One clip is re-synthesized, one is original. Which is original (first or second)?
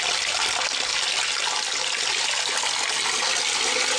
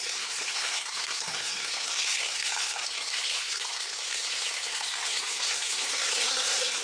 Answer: first